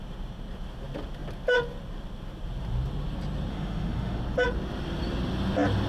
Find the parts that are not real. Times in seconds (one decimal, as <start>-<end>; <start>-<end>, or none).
3.5-4.2